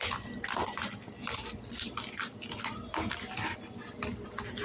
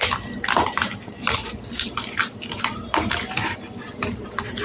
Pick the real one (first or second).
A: first